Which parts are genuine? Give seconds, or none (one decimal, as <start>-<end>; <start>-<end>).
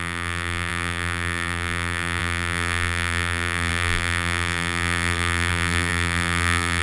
none